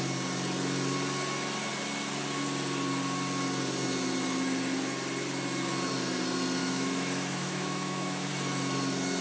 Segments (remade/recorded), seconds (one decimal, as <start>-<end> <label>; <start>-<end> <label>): 0.0-6.6 recorded; 6.6-8.3 remade; 8.3-9.2 recorded